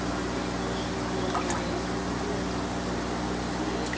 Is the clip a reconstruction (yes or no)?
no